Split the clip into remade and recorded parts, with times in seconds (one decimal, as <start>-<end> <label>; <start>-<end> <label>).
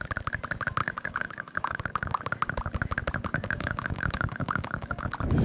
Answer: 0.0-0.8 recorded; 0.8-2.2 remade; 2.2-3.3 recorded; 3.3-5.0 remade; 5.0-5.4 recorded